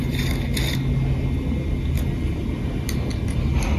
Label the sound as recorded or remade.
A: recorded